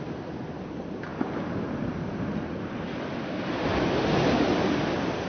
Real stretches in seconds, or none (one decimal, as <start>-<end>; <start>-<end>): none